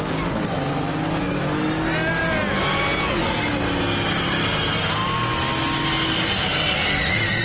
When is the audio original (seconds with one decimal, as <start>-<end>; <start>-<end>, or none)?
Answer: 0.0-7.4